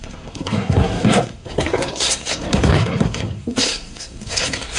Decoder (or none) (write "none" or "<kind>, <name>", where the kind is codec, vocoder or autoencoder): codec, SNAC